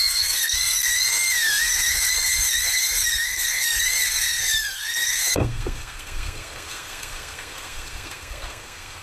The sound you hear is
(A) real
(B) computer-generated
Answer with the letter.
B